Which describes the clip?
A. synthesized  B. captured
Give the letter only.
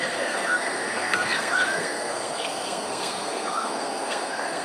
A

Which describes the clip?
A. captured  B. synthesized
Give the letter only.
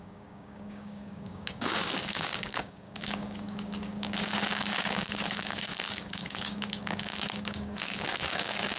B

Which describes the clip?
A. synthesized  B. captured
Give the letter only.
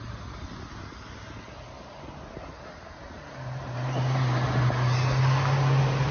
B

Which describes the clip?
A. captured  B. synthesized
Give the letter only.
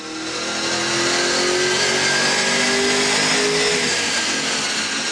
A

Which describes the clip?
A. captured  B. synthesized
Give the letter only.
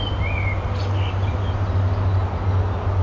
A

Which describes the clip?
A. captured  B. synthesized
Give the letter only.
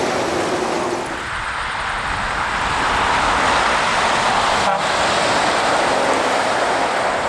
A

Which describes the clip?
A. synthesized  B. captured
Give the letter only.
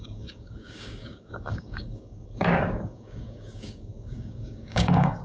A